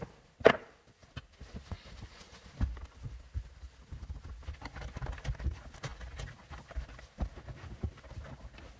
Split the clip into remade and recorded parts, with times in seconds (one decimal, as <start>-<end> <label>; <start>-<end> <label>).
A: 0.0-8.8 recorded

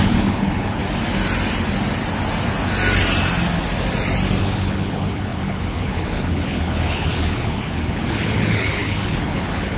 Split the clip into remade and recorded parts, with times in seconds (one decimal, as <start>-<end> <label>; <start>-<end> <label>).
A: 0.0-0.8 remade; 0.8-4.4 recorded; 4.4-9.8 remade

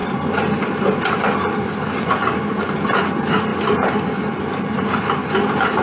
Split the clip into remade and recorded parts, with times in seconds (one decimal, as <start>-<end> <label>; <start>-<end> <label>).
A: 0.0-5.8 recorded

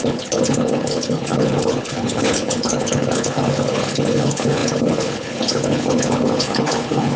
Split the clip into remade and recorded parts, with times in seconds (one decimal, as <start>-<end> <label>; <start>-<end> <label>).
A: 0.0-7.2 remade